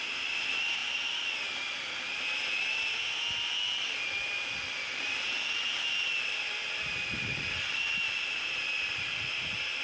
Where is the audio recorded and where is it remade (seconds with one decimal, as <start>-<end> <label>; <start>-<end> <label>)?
0.0-0.8 remade; 0.8-6.0 recorded; 6.0-9.8 remade